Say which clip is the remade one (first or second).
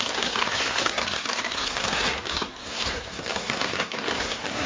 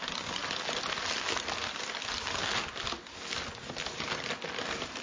first